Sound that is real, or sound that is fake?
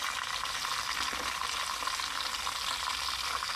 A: real